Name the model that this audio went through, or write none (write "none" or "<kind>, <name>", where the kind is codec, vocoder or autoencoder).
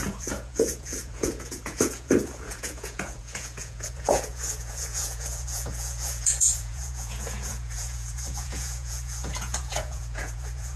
vocoder, Vocos